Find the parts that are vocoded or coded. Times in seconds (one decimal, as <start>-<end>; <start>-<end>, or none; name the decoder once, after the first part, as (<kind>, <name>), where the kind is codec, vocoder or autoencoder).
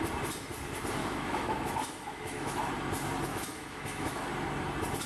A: 1.0-2.7 (autoencoder, DAC-VAE); 3.3-4.3